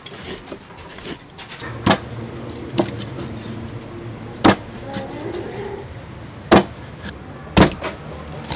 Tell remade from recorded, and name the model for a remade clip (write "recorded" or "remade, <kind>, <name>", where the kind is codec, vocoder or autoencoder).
recorded